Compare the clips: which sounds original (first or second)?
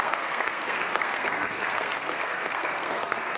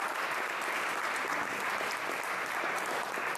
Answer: second